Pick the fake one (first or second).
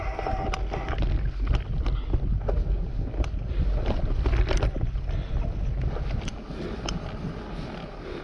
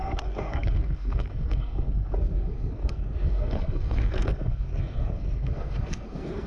second